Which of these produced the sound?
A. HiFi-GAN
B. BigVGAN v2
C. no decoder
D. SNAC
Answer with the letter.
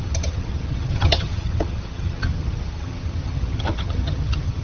A